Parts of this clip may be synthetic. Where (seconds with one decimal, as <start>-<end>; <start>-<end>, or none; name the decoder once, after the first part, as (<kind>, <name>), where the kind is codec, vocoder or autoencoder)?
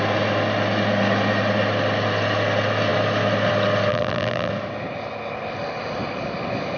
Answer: 3.9-4.5 (vocoder, BigVGAN v2)